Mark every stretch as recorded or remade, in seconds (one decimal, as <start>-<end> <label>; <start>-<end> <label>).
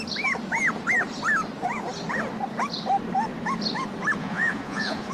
0.0-4.2 recorded; 4.2-5.1 remade